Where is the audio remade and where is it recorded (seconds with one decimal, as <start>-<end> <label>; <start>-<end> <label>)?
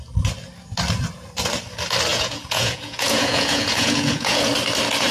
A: 0.0-2.1 recorded; 2.1-4.5 remade; 4.5-5.1 recorded